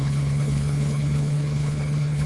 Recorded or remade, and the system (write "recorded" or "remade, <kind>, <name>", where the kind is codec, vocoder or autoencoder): remade, codec, HILCodec